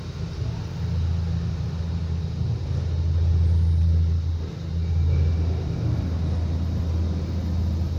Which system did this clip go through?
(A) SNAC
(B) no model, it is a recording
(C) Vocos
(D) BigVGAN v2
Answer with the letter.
B